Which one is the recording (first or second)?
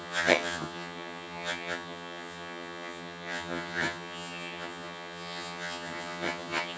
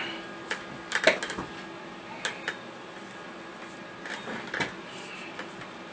second